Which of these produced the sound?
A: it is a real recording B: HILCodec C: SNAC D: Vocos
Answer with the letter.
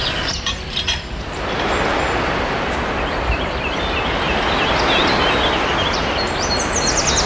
A